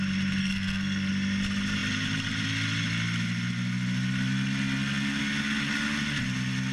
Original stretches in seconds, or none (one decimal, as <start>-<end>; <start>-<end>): 0.0-0.4; 1.1-6.7